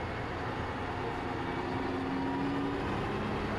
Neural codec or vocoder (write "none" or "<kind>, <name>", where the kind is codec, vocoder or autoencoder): none